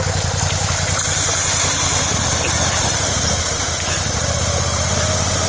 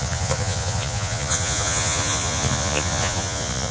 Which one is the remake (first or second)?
second